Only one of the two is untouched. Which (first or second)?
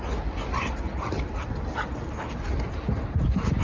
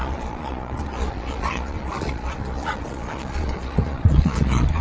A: first